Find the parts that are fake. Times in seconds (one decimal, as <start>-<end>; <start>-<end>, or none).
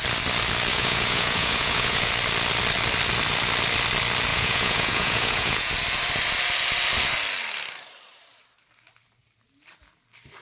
0.7-2.1; 4.3-5.7